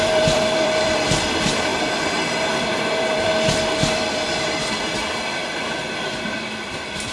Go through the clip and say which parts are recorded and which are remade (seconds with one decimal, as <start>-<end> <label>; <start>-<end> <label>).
0.0-1.7 remade; 1.7-2.6 recorded; 2.6-3.3 remade; 3.3-4.1 recorded; 4.1-7.1 remade